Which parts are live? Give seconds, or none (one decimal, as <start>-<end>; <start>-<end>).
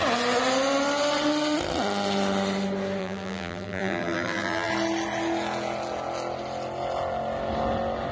0.0-3.0; 4.7-8.1